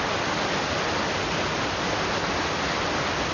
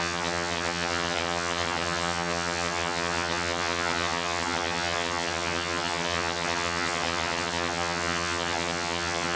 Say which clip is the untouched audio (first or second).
first